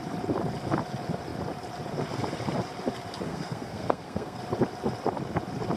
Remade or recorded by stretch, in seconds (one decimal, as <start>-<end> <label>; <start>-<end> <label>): 0.0-3.3 recorded; 3.3-4.4 remade; 4.4-5.8 recorded